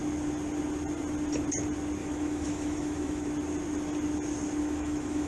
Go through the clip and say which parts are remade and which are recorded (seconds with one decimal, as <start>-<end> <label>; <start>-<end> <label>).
0.0-2.0 recorded; 2.0-3.3 remade; 3.3-4.6 recorded; 4.6-5.3 remade